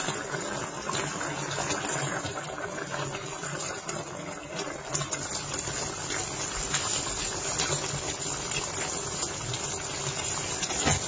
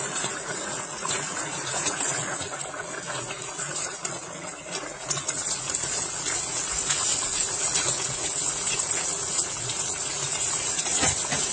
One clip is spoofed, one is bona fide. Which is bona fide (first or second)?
first